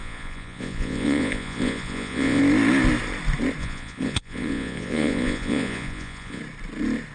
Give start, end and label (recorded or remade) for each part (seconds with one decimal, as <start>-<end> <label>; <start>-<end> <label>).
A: 0.0-2.4 remade; 2.4-3.6 recorded; 3.6-6.4 remade; 6.4-7.1 recorded